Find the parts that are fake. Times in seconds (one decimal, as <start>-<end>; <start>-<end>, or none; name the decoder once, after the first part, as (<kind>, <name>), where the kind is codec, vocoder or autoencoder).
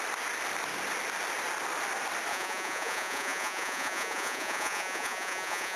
2.3-5.8 (vocoder, Vocos)